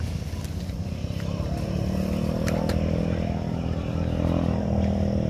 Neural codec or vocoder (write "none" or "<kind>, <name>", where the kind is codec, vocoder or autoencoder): none